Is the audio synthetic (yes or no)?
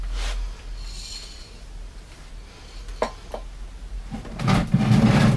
no